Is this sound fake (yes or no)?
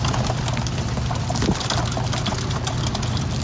no